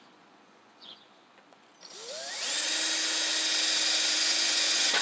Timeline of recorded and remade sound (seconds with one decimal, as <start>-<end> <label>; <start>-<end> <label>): 0.0-1.7 remade; 1.7-4.1 recorded; 4.1-5.0 remade